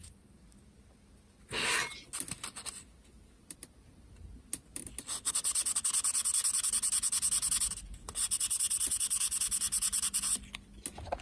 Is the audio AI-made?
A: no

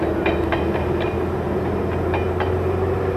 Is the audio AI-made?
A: no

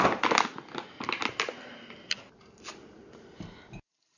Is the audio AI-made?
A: no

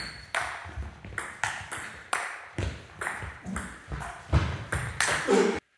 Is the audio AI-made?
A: no